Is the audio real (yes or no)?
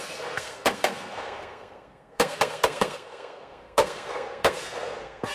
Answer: no